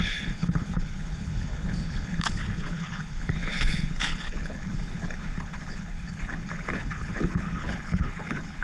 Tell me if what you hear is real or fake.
fake